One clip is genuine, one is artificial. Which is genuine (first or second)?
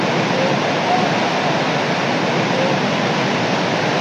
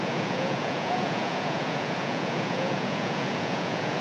first